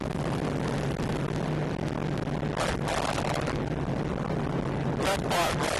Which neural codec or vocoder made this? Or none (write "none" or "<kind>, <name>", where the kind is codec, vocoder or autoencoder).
none